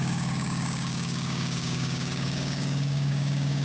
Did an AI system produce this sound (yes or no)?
yes